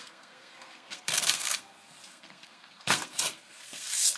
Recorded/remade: remade